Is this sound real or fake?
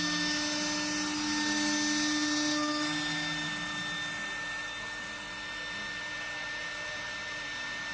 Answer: real